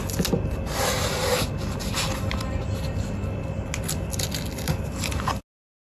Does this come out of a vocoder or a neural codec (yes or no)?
no